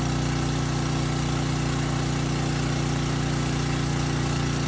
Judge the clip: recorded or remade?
recorded